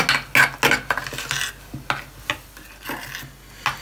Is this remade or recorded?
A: recorded